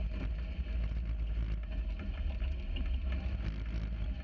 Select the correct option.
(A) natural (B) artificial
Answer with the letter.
A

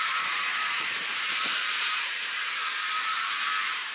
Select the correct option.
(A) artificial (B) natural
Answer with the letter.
A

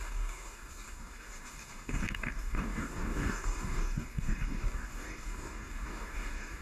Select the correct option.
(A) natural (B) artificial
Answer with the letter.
B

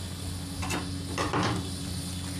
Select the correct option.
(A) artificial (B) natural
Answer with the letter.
B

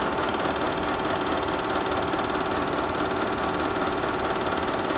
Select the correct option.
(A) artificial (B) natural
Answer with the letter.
B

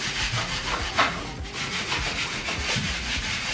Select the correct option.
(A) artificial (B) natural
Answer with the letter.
A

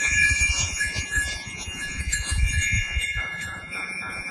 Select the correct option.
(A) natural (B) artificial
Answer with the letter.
B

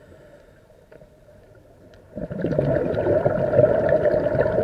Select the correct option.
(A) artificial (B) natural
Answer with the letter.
B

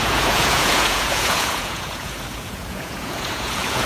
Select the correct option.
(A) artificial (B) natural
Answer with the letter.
A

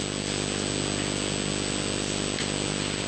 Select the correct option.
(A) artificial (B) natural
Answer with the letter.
B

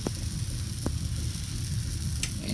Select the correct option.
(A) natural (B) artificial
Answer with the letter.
A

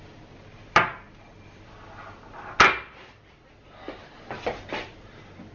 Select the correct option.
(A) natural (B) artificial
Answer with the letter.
A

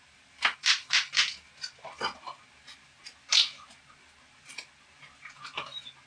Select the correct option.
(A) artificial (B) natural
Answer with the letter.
B